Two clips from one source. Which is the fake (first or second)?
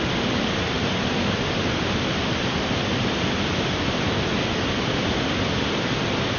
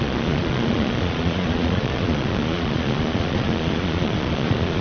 second